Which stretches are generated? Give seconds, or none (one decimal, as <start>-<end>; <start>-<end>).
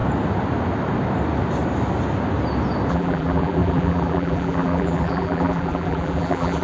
2.9-6.6